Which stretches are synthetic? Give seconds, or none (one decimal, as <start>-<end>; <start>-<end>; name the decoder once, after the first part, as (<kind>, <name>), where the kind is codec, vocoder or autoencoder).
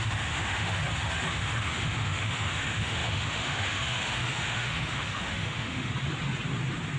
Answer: 0.0-0.8 (autoencoder, DAC-VAE); 1.3-5.9